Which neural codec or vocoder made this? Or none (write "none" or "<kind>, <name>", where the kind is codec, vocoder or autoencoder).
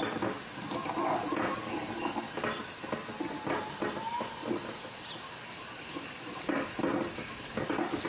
none